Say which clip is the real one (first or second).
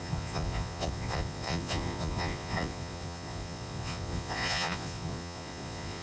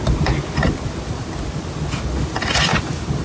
second